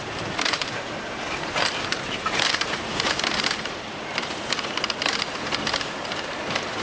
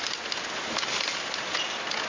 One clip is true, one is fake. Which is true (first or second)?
second